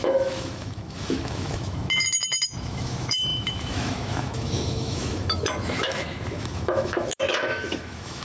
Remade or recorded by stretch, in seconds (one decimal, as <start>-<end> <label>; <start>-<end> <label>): 0.0-8.2 remade